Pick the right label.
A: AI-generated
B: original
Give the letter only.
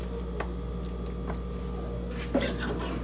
B